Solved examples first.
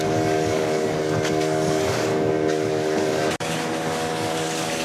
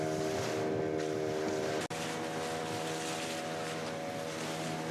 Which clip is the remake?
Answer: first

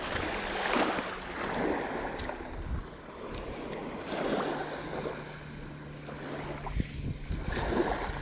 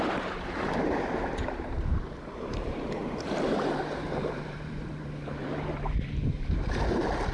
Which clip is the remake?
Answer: second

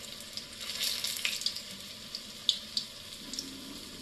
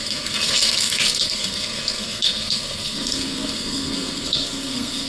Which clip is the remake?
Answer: second